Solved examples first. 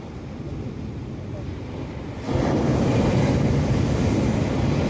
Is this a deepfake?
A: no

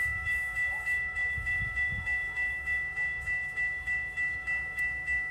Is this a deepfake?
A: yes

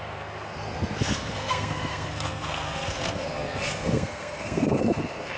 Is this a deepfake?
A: yes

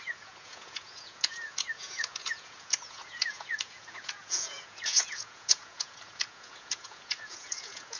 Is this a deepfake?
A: yes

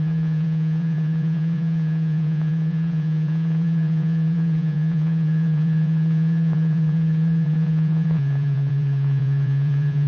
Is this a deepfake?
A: yes